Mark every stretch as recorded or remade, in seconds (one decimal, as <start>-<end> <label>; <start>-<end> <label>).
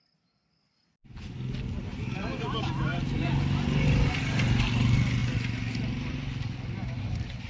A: 0.0-7.5 recorded